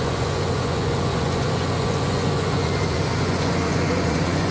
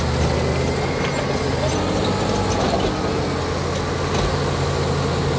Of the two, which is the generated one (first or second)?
first